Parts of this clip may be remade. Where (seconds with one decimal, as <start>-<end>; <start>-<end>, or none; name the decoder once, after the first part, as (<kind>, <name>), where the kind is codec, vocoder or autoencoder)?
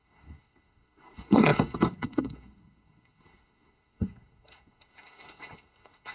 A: 0.0-6.1 (codec, SNAC)